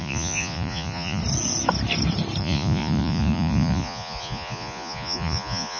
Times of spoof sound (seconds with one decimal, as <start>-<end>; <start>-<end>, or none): 0.0-1.2; 2.4-5.8